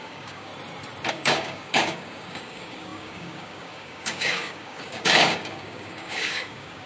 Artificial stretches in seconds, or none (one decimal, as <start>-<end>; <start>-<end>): 0.0-0.5; 1.1-6.9